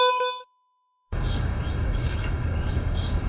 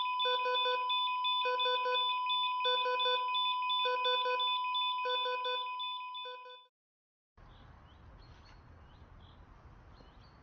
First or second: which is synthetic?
first